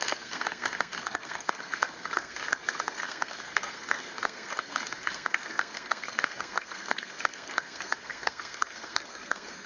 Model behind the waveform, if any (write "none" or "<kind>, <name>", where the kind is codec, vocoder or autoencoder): codec, SNAC